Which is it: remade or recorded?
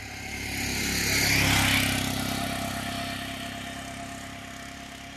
recorded